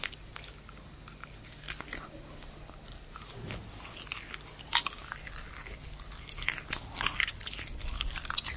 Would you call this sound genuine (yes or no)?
yes